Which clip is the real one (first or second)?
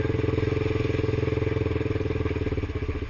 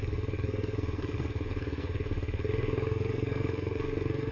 first